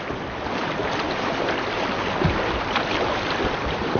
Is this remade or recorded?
recorded